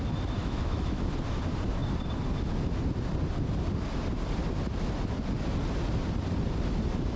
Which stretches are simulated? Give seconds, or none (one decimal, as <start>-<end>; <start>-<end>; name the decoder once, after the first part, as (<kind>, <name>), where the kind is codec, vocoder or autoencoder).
0.4-1.1 (autoencoder, DAC-VAE)